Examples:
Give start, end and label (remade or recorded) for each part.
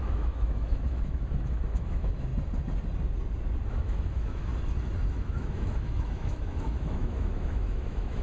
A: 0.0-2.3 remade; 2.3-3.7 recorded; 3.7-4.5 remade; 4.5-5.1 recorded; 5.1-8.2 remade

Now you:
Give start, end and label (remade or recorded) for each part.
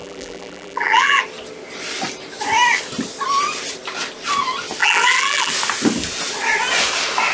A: 0.0-1.2 remade; 1.2-4.8 recorded; 4.8-5.5 remade; 5.5-7.3 recorded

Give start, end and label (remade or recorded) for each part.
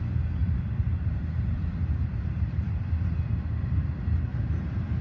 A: 0.0-0.4 recorded; 0.4-2.9 remade; 2.9-4.3 recorded; 4.3-5.0 remade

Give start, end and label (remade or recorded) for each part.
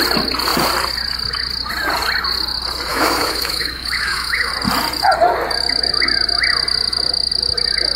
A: 0.0-2.9 recorded; 2.9-4.5 remade; 4.5-8.0 recorded